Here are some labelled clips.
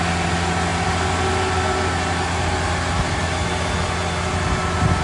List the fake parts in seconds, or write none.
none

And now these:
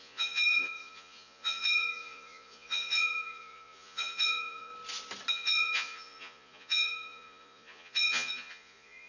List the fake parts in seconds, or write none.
0.0-4.7 (vocoder, Vocos); 5.3-9.1

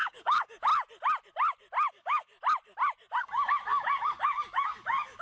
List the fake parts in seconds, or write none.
0.0-0.7 (codec, DAC); 1.9-2.3; 3.2-5.2